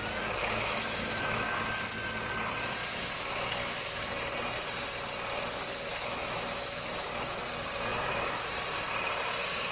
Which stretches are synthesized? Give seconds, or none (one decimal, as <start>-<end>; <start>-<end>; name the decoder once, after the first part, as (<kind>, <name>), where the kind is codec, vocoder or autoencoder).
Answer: 0.4-1.6 (autoencoder, DAC-VAE); 2.9-4.1; 5.9-7.4; 7.9-8.5